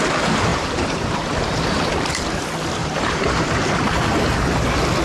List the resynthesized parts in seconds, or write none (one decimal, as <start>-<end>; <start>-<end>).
0.5-1.9; 2.8-4.6